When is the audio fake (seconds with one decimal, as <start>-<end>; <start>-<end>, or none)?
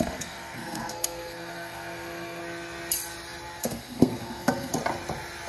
0.0-2.4; 3.6-4.7